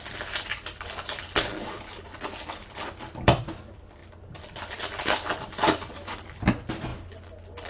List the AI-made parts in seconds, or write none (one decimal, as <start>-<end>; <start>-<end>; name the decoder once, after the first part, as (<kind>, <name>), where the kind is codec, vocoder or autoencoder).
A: 0.0-4.0 (vocoder, BigVGAN v2); 5.6-6.9